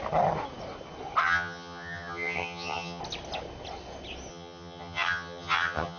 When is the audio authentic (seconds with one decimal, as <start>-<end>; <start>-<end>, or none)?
0.0-1.2; 3.0-4.3